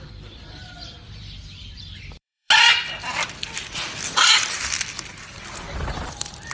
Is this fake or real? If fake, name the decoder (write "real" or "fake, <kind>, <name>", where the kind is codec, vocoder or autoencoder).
fake, vocoder, BigVGAN v2